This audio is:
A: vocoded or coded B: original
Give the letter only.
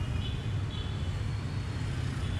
B